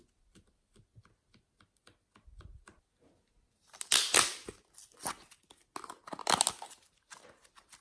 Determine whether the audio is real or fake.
real